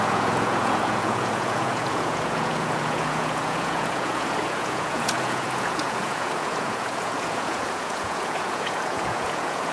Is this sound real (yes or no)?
no